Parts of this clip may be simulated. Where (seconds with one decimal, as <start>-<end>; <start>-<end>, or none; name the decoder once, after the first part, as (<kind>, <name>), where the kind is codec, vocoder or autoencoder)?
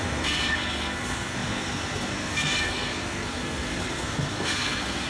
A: 0.0-5.1 (codec, SNAC)